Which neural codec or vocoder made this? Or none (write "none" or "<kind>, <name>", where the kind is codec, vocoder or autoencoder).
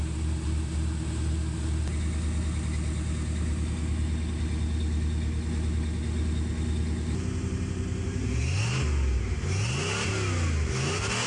none